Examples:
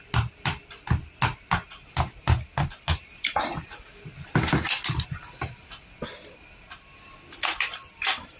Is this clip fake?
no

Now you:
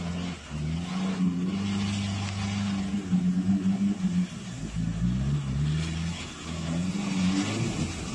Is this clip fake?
no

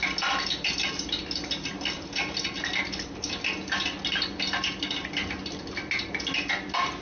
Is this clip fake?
no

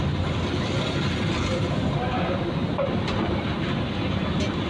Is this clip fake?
no